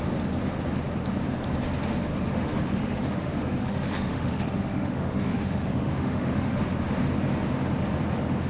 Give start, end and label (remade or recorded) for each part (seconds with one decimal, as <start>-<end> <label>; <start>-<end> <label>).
0.0-2.1 recorded; 2.1-6.6 remade; 6.6-8.5 recorded